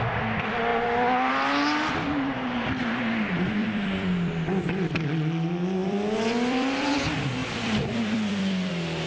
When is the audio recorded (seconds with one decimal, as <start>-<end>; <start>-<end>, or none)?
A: 0.0-3.6; 4.3-5.8; 6.9-7.4; 8.7-9.1